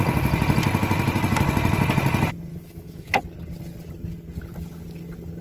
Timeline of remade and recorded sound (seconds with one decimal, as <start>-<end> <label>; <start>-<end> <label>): 0.0-2.5 recorded; 2.5-3.2 remade; 3.2-5.4 recorded

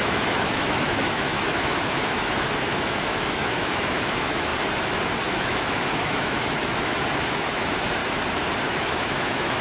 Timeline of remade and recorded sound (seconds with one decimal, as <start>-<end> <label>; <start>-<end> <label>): 0.0-4.5 remade; 4.5-5.2 recorded; 5.2-8.0 remade; 8.0-8.7 recorded; 8.7-9.6 remade

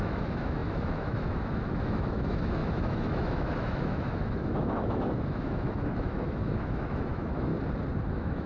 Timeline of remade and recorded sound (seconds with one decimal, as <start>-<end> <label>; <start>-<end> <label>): 0.0-7.5 remade; 7.5-8.1 recorded; 8.1-8.5 remade

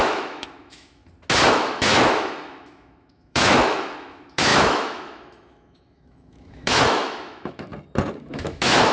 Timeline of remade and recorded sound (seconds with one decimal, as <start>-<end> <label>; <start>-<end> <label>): 0.0-1.0 remade; 1.0-1.5 recorded; 1.5-7.7 remade; 7.7-8.2 recorded; 8.2-8.9 remade

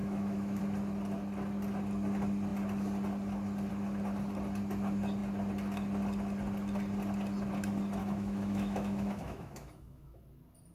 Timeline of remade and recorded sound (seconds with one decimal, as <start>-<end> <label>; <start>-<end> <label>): 0.0-0.6 remade; 0.6-8.0 recorded; 8.0-10.2 remade; 10.2-10.7 recorded